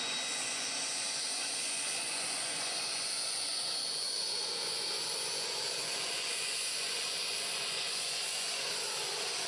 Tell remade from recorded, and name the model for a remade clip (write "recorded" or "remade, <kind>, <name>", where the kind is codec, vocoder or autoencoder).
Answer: remade, vocoder, Vocos